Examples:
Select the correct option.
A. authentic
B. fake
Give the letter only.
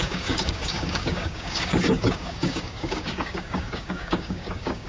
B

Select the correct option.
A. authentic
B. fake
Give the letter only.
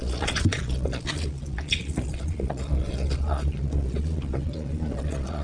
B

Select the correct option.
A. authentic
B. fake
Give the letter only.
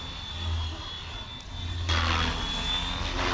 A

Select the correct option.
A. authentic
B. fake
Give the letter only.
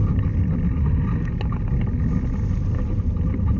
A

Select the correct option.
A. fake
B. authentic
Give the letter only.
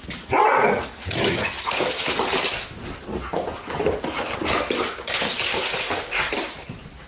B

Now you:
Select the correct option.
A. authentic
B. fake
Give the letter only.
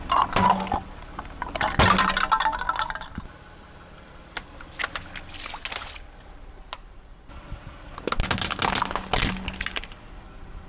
A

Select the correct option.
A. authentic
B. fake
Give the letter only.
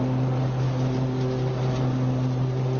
A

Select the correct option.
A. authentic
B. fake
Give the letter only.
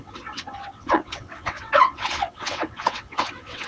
B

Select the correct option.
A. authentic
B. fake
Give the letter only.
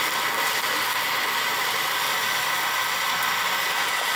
A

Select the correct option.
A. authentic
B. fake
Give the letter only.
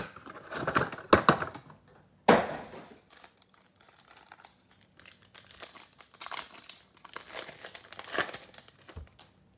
A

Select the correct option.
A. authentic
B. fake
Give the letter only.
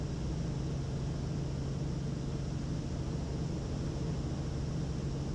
A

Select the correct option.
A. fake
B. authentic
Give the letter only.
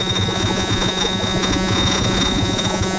A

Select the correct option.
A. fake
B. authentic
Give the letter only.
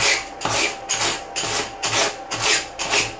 B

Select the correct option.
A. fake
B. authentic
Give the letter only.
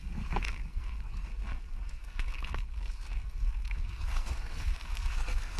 A